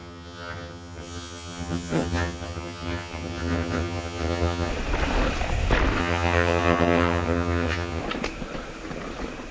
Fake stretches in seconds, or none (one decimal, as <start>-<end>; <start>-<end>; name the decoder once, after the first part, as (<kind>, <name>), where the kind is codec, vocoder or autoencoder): 0.0-4.7 (vocoder, HiFi-GAN); 6.0-8.0